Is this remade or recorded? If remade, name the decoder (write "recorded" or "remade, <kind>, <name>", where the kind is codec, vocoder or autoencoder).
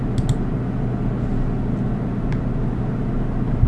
recorded